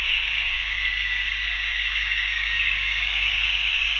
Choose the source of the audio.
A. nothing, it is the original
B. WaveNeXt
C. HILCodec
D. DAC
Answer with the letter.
D